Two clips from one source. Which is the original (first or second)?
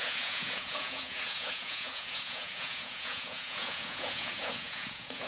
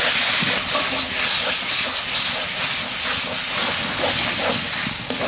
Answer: second